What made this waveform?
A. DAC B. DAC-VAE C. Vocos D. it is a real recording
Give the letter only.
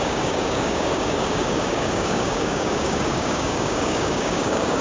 A